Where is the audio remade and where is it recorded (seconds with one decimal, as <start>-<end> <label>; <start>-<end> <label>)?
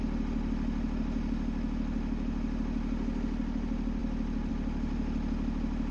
0.0-5.9 recorded